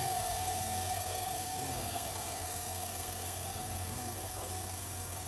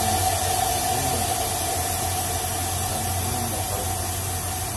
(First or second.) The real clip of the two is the second